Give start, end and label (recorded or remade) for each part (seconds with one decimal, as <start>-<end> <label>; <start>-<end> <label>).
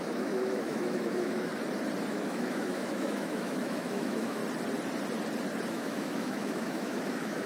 0.0-1.5 remade; 1.5-2.1 recorded; 2.1-4.4 remade; 4.4-5.7 recorded; 5.7-7.5 remade